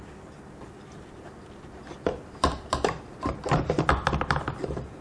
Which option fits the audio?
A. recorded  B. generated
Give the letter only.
A